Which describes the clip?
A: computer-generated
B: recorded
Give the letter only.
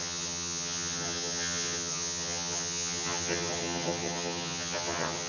A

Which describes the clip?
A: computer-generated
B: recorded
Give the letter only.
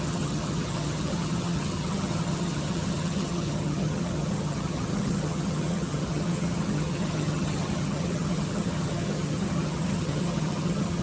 A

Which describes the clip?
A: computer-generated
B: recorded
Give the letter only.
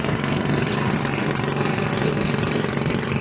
B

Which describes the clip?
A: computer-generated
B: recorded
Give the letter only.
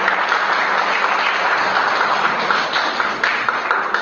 B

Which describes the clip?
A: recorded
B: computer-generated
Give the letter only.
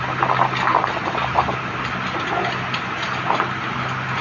A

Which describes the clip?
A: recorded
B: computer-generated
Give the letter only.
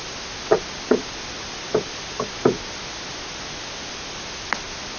A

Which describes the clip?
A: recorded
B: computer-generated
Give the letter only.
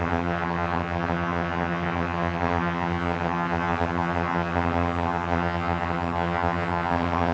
B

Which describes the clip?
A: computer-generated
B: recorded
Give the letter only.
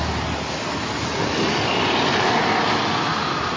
B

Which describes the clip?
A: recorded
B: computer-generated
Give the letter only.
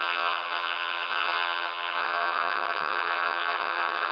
B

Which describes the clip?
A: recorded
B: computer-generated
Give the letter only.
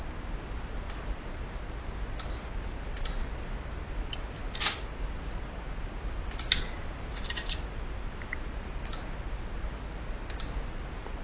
A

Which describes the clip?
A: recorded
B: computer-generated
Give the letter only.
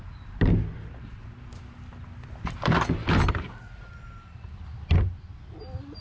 A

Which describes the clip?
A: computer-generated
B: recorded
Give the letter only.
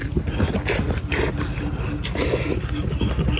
B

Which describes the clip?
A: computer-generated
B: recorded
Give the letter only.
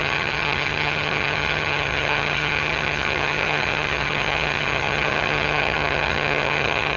A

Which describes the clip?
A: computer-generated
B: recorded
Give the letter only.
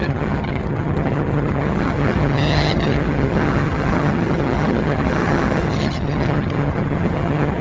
A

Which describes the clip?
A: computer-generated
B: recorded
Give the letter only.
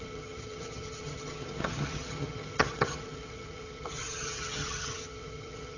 A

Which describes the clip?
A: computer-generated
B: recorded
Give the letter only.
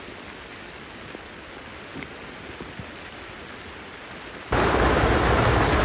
B